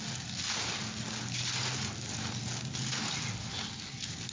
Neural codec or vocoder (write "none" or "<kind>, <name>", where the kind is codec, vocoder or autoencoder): none